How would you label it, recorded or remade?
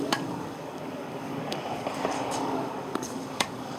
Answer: remade